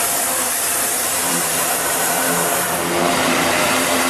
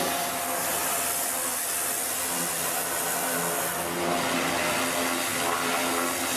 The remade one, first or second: first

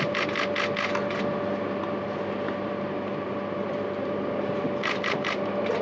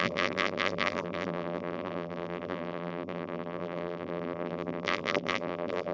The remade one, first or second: second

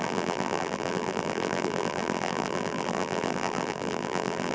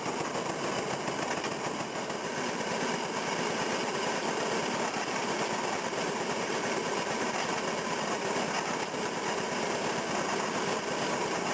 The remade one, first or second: first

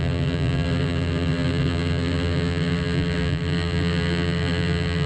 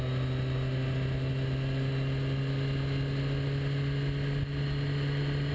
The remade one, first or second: first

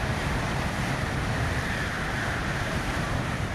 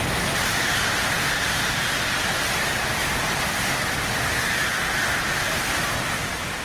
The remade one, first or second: first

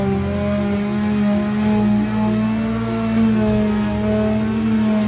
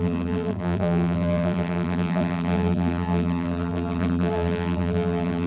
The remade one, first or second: second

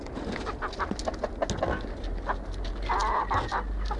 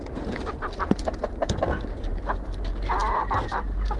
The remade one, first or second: second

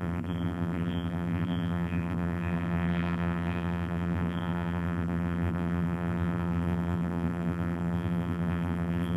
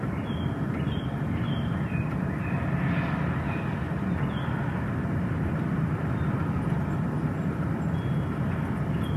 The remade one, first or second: first